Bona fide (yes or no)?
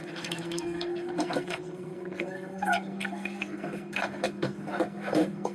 no